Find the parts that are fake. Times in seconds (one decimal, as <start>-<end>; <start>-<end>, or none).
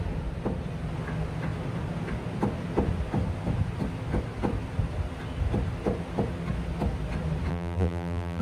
7.5-8.4